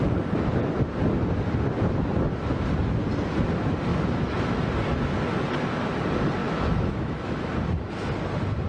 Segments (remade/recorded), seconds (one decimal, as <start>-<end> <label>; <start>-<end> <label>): 0.0-3.9 recorded; 3.9-4.5 remade; 4.5-6.4 recorded; 6.4-7.5 remade; 7.5-8.7 recorded